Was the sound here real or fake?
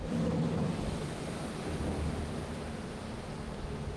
real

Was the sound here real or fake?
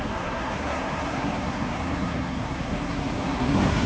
fake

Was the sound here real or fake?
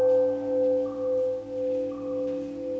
real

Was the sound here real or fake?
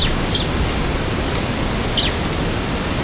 real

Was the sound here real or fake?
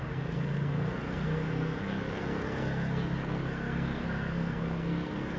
fake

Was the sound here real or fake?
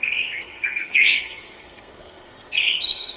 fake